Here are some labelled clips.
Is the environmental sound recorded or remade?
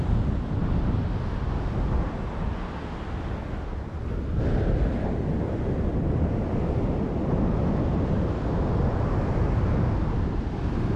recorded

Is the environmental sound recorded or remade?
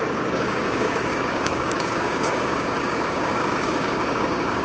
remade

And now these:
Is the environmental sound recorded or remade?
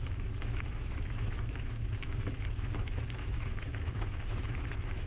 remade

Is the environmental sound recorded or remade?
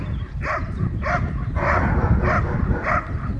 recorded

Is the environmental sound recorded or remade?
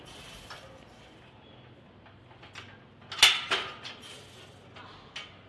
recorded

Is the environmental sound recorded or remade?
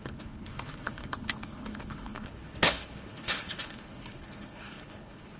remade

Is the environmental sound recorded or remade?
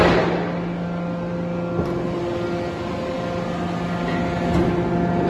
recorded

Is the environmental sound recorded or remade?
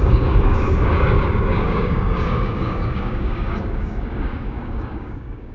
remade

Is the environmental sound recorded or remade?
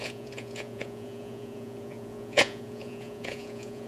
remade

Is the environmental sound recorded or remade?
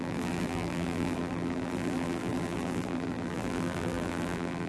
remade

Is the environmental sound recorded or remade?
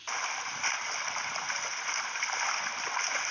recorded